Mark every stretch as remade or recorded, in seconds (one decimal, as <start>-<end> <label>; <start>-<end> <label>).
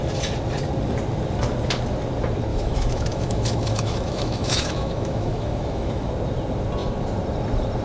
0.0-2.5 recorded; 2.5-6.1 remade; 6.1-7.8 recorded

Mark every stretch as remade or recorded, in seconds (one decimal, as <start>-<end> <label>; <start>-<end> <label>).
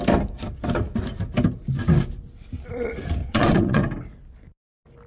0.0-3.2 recorded; 3.2-3.8 remade; 3.8-5.1 recorded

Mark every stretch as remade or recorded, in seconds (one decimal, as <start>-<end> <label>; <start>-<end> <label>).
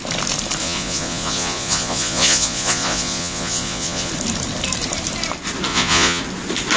0.0-0.6 recorded; 0.6-4.1 remade; 4.1-5.7 recorded; 5.7-6.2 remade; 6.2-6.8 recorded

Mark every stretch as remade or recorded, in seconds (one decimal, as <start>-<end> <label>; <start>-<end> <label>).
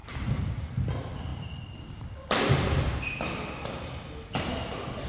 0.0-0.7 remade; 0.7-5.1 recorded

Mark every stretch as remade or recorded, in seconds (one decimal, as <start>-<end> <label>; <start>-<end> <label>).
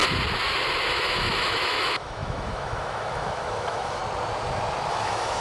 0.0-0.9 recorded; 0.9-4.0 remade; 4.0-4.9 recorded; 4.9-5.4 remade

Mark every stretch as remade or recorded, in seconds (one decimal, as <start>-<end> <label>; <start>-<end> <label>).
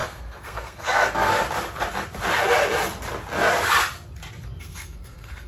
0.0-1.3 remade; 1.3-4.6 recorded; 4.6-5.5 remade